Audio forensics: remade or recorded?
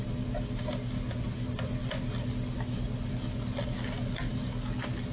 recorded